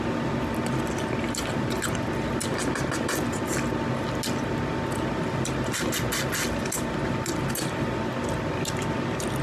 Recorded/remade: recorded